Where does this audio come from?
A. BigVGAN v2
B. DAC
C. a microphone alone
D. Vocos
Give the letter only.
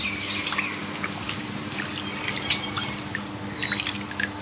C